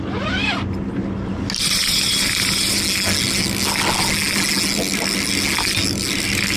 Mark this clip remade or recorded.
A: recorded